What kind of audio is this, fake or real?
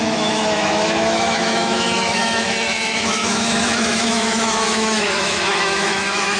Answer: fake